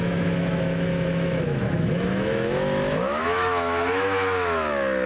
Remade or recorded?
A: remade